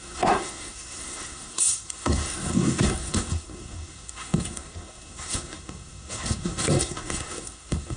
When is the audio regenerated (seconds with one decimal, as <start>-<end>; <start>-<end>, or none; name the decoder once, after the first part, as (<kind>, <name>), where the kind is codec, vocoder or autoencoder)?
0.0-8.0 (codec, SNAC)

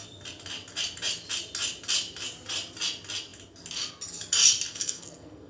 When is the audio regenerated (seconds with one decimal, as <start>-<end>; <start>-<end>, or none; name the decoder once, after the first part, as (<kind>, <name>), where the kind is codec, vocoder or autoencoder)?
4.7-5.5 (codec, SNAC)

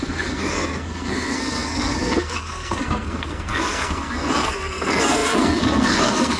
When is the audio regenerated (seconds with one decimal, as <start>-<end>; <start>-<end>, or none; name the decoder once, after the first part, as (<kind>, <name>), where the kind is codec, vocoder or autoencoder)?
0.0-6.4 (codec, SNAC)

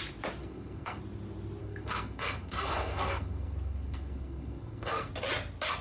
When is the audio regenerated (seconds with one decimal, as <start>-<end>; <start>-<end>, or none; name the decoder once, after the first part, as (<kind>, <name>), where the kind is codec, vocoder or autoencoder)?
0.4-1.0 (codec, SNAC); 1.6-5.1

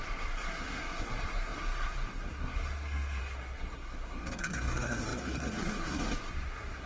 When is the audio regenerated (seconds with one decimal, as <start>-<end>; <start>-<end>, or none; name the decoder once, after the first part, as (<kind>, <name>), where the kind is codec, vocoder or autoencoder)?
0.0-6.9 (codec, SNAC)

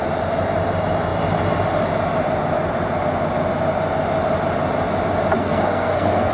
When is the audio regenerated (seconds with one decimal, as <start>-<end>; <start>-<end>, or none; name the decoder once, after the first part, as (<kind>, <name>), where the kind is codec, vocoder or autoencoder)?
5.4-6.3 (codec, SNAC)

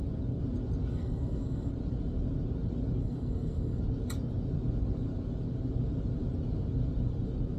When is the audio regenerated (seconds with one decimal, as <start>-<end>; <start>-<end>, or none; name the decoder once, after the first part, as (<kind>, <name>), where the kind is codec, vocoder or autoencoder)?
0.9-1.7 (codec, SNAC); 3.0-3.8